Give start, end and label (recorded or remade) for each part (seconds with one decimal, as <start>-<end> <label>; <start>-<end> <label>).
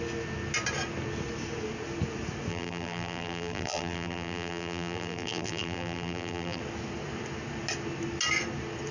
0.0-2.5 recorded; 2.5-6.6 remade; 6.6-8.9 recorded